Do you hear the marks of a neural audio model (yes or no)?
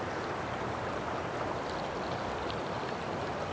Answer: no